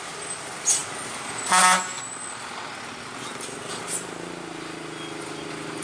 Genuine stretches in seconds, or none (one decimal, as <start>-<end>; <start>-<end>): 0.0-5.8